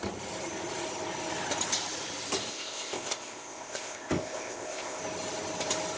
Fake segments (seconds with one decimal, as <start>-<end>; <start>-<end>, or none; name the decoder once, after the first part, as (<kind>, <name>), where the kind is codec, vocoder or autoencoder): 2.5-5.0 (codec, ZipCodec)